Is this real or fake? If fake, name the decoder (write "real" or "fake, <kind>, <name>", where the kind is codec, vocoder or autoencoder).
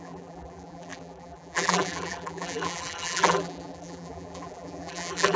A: fake, vocoder, BigVGAN v2